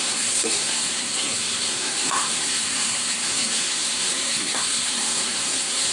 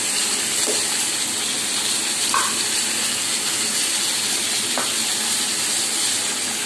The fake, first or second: first